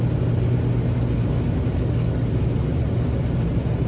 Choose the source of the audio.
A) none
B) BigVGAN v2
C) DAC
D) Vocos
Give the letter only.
A